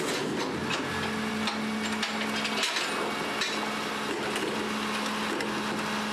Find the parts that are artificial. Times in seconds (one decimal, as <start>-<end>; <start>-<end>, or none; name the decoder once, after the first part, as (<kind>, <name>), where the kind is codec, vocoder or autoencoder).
none